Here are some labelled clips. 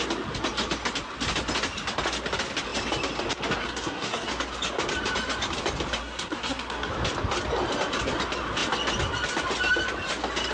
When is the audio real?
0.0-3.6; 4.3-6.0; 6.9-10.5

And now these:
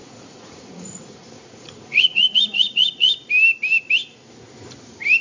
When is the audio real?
3.1-5.2

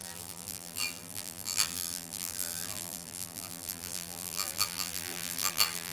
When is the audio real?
none

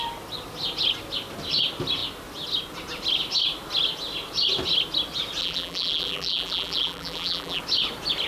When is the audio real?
0.0-5.4; 7.6-8.3

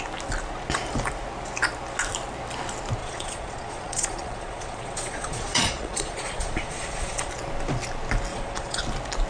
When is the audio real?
0.0-3.0; 7.3-8.3; 8.8-9.3

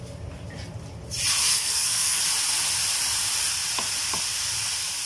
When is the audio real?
0.0-1.4; 2.2-5.1

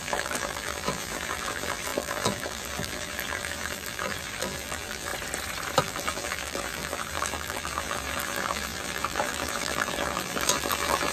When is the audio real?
5.1-5.8